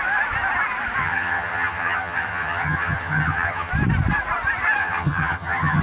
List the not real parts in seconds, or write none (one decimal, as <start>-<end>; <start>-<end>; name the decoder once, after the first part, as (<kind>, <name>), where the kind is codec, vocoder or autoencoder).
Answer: 1.0-3.7 (vocoder, HiFi-GAN); 4.8-5.8